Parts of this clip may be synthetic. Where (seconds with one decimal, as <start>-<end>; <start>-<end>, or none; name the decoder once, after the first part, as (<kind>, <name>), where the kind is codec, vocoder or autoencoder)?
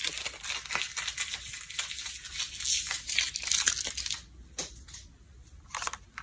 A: 5.0-6.2 (vocoder, BigVGAN v2)